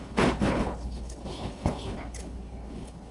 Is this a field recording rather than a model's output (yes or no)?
no